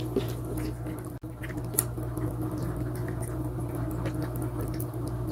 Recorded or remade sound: recorded